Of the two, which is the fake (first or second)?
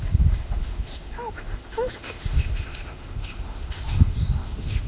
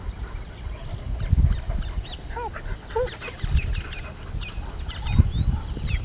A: first